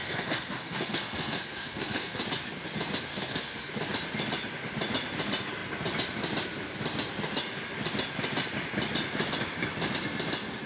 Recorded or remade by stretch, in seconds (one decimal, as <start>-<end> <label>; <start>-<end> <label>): 0.0-2.2 remade; 2.2-3.1 recorded; 3.1-3.7 remade; 3.7-10.7 recorded